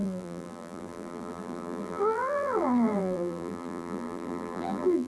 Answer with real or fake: fake